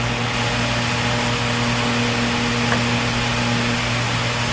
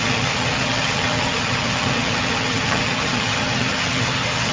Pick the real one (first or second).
first